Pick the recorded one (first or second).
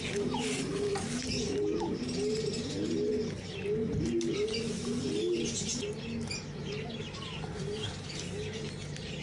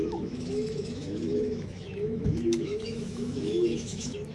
first